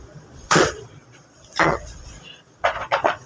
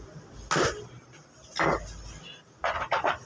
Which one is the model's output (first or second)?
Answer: first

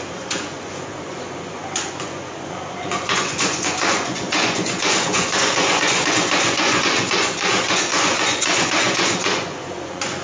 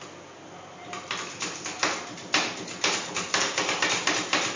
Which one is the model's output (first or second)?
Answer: first